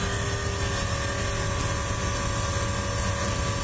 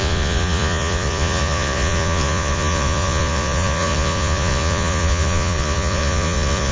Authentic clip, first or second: first